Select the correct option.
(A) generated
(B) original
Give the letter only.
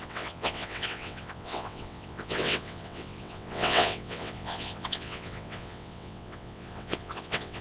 A